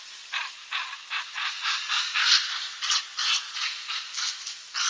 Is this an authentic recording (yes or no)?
yes